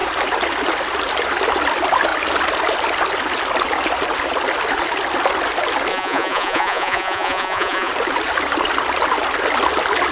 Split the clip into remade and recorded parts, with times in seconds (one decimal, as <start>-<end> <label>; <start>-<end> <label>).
0.0-5.9 recorded; 5.9-7.9 remade; 7.9-10.1 recorded